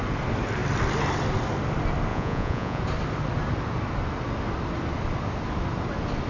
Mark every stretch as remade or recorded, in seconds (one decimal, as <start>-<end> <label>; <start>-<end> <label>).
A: 0.0-2.1 recorded; 2.1-2.8 remade; 2.8-6.3 recorded